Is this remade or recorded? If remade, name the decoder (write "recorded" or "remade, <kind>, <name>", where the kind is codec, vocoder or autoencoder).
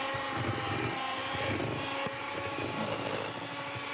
recorded